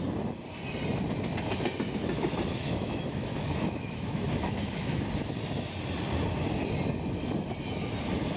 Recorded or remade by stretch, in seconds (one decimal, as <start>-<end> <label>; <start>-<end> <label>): 0.0-2.5 recorded; 2.5-5.0 remade; 5.0-8.4 recorded